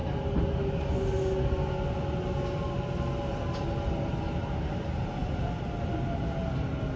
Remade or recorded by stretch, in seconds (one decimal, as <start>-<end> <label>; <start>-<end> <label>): 0.0-7.0 recorded